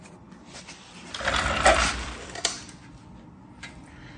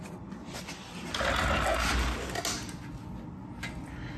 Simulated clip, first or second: first